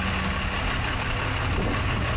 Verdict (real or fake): real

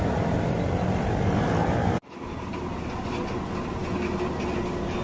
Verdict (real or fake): real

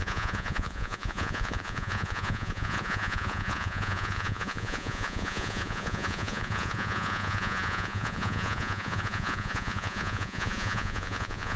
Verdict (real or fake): fake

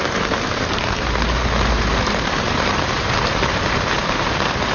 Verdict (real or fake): fake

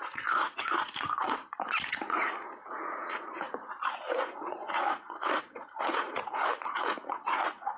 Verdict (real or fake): fake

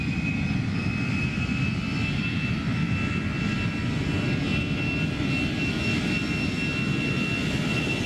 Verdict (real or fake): real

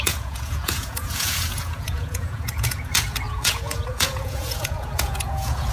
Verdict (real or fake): fake